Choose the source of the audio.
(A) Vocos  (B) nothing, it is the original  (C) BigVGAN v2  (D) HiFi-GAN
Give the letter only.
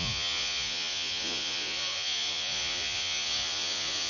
A